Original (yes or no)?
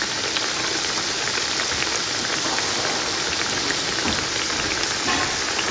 yes